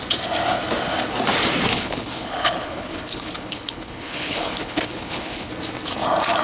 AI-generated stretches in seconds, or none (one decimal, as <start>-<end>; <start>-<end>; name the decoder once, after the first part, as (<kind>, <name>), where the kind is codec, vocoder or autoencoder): 1.7-5.5 (codec, HILCodec)